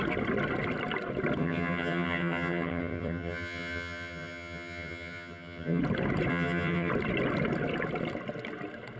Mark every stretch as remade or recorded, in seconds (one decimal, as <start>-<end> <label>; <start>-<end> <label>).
0.0-1.4 recorded; 1.4-5.8 remade; 5.8-6.3 recorded; 6.3-6.9 remade; 6.9-9.0 recorded